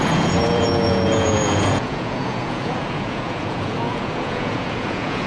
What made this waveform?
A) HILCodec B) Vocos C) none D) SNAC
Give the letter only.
B